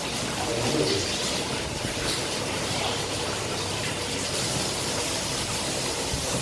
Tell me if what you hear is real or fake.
fake